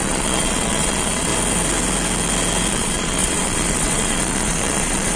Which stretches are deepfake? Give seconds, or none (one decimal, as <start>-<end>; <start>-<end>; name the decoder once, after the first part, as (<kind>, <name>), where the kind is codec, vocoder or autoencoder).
0.0-1.3 (vocoder, Vocos); 2.7-5.2